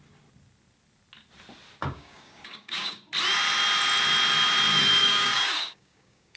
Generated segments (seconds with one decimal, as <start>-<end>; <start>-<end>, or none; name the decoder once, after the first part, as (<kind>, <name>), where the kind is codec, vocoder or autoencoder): 1.8-3.1 (codec, DAC); 5.0-6.4